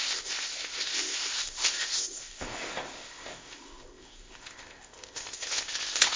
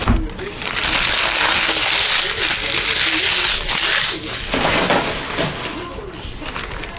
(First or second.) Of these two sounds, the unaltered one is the second